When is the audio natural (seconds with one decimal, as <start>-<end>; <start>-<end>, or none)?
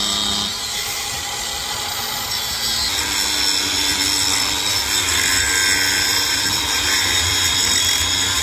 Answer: 0.0-6.1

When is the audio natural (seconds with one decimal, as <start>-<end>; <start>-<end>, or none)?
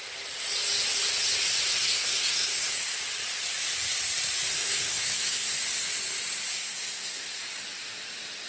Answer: 0.0-1.7; 3.0-4.5; 5.6-6.5; 7.4-8.5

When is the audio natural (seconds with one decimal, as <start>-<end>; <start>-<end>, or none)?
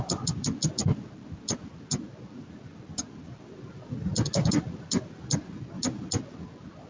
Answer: 0.0-6.9